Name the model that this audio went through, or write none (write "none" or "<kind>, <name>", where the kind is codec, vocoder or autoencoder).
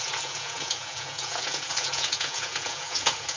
vocoder, Vocos